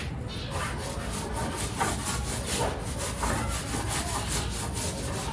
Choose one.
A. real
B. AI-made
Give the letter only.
A